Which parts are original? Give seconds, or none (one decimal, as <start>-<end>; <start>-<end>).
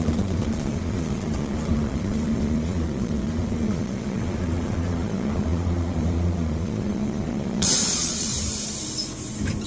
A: 8.3-9.7